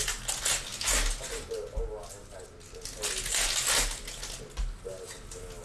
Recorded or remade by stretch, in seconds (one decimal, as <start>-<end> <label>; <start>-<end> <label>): 0.0-5.6 recorded